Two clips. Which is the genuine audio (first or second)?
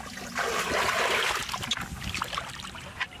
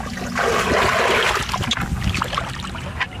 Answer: second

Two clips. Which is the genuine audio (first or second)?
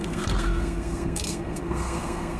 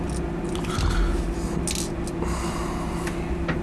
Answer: second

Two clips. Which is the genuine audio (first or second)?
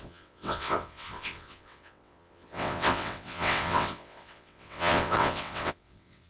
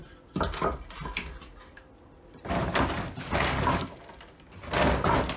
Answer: second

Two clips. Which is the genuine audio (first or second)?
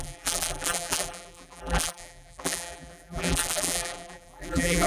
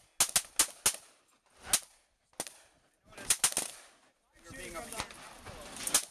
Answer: second